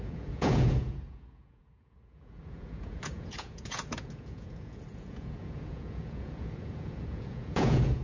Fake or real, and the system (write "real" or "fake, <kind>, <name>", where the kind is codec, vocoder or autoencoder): fake, vocoder, Vocos